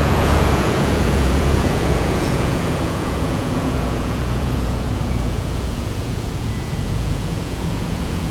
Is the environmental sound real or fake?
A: fake